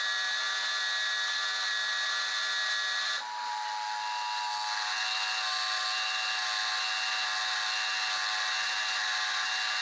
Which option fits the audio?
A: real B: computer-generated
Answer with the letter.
A